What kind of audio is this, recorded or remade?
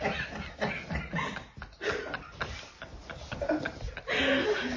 recorded